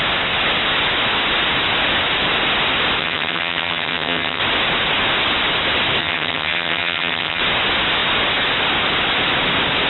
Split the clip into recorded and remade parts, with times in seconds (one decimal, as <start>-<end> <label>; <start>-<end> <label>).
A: 0.0-3.0 recorded; 3.0-4.4 remade; 4.4-6.0 recorded; 6.0-7.4 remade; 7.4-9.9 recorded